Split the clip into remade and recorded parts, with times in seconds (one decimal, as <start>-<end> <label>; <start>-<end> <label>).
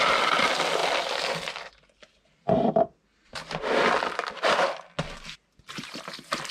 0.0-6.5 recorded